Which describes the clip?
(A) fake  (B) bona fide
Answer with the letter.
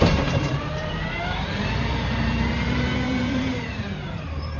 A